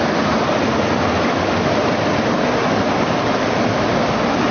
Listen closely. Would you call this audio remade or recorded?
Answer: recorded